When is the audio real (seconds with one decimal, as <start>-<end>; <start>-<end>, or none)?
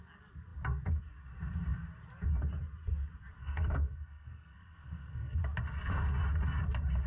0.0-3.4; 5.4-7.1